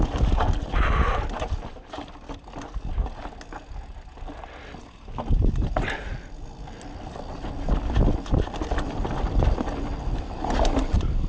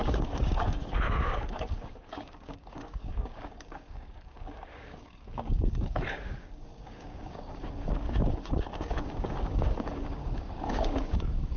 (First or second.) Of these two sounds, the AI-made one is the second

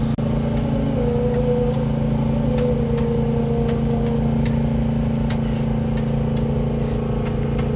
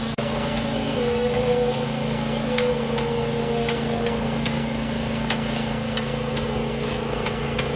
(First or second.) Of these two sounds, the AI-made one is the second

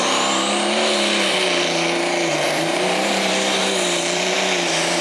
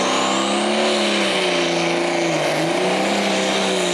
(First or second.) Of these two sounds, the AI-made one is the first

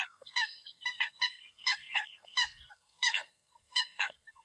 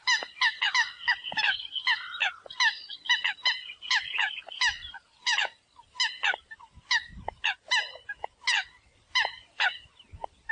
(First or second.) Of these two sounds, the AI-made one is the first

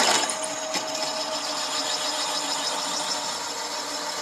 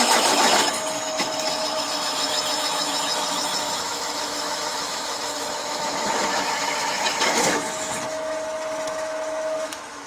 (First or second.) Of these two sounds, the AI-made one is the second